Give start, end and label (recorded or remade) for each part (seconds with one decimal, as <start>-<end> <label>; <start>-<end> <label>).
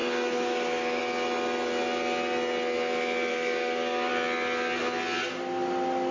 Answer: 0.0-1.0 remade; 1.0-3.3 recorded; 3.3-4.1 remade; 4.1-6.1 recorded